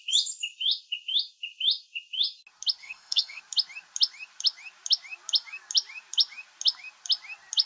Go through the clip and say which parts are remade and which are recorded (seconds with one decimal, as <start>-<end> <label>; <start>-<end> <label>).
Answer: 0.0-2.8 recorded; 2.8-3.4 remade; 3.4-7.7 recorded